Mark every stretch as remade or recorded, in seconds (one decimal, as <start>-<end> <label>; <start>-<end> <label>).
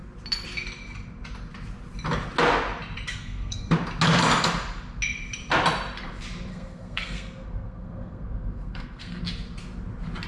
0.0-3.1 recorded; 3.1-3.7 remade; 3.7-6.5 recorded; 6.5-9.2 remade; 9.2-10.3 recorded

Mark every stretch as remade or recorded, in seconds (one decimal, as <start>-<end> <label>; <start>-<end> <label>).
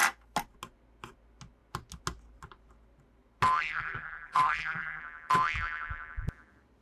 0.0-3.6 recorded; 3.6-5.0 remade; 5.0-6.8 recorded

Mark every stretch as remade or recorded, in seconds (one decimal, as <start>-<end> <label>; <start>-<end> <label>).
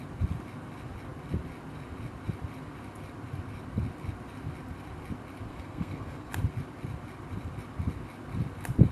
0.0-5.5 recorded; 5.5-6.3 remade; 6.3-8.9 recorded